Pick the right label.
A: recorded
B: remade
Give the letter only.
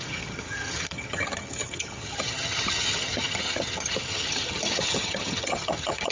B